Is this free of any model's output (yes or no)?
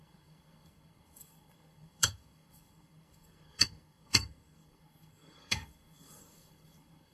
no